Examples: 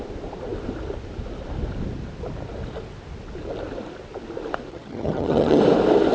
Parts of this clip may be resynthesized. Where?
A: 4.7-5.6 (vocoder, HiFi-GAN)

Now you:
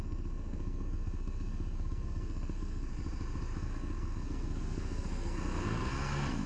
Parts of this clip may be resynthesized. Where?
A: 0.0-2.9 (codec, SNAC); 3.6-6.5

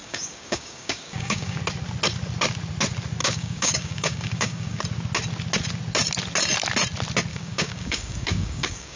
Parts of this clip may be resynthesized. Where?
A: 0.0-1.6 (codec, DAC); 3.2-4.8; 7.3-9.0

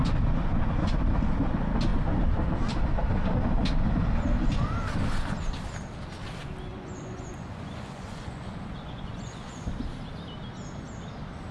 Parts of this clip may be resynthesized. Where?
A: 6.7-9.7 (vocoder, Vocos)

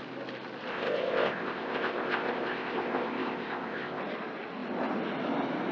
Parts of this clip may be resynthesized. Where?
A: 0.7-4.0 (codec, ZipCodec)

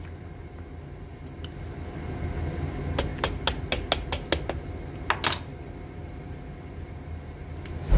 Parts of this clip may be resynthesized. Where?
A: none